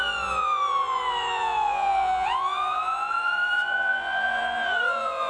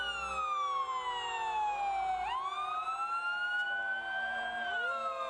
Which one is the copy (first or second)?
first